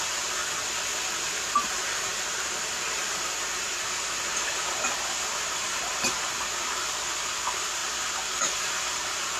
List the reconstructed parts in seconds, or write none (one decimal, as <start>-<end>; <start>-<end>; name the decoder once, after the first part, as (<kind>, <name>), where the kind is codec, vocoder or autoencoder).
0.0-0.4 (vocoder, BigVGAN v2); 1.7-7.8; 8.6-9.4